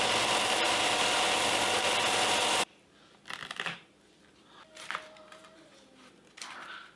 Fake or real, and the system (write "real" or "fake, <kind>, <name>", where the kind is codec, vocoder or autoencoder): real